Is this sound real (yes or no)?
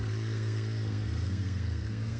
no